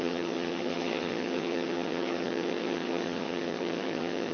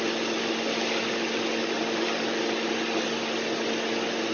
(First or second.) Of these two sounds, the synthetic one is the first